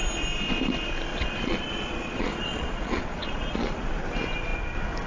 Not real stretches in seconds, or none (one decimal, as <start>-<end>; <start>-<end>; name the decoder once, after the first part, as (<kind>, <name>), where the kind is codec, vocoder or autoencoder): 1.1-3.8 (vocoder, Vocos)